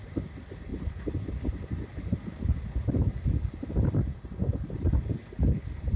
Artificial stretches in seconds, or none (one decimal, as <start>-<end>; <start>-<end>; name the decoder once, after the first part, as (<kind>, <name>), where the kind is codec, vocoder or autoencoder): none